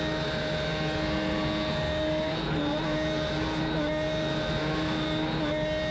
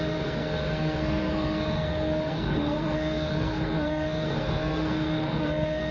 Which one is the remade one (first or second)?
second